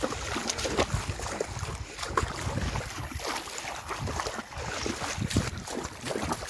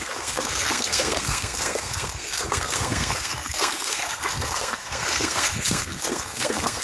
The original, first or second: first